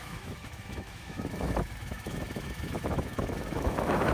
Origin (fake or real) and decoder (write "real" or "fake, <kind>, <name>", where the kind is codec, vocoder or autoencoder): fake, autoencoder, DAC-VAE